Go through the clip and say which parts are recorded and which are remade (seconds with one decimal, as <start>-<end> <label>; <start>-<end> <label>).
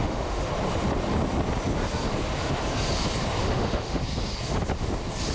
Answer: 0.0-0.5 remade; 0.5-3.4 recorded; 3.4-4.0 remade; 4.0-5.3 recorded